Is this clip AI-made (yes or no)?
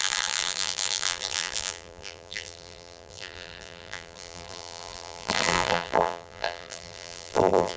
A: yes